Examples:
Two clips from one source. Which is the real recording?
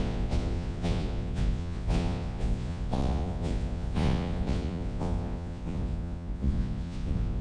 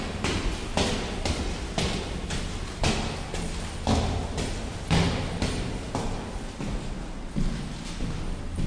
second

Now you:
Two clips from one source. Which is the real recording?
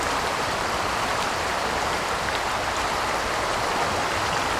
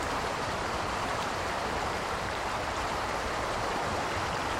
first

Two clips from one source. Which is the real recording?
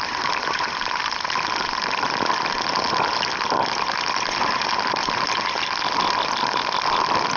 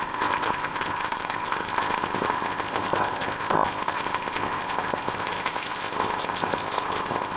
first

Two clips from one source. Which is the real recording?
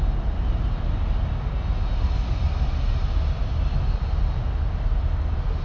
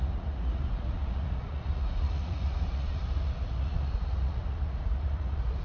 first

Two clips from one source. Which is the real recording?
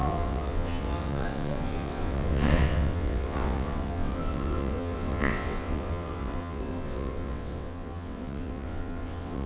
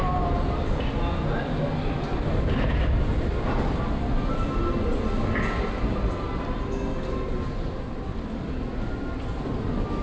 second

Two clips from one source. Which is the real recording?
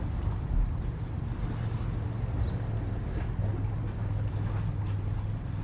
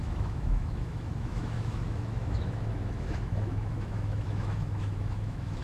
first